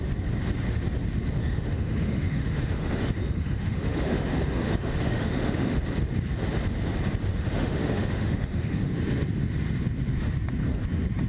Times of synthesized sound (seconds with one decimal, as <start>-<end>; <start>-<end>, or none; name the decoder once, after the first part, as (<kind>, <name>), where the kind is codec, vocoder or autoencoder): 1.4-5.8 (autoencoder, DAC-VAE); 7.3-8.9